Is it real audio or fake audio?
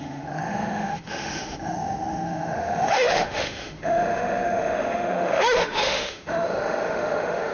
fake